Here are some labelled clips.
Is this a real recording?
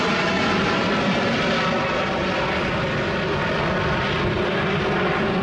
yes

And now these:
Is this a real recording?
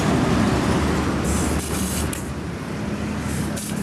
yes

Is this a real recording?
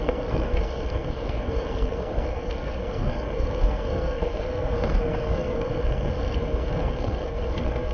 no